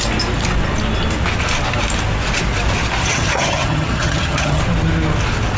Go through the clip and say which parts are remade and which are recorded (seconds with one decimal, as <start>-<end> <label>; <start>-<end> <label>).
0.0-3.0 recorded; 3.0-4.6 remade; 4.6-5.6 recorded